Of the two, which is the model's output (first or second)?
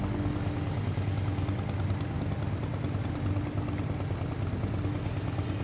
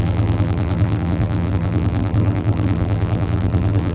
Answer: second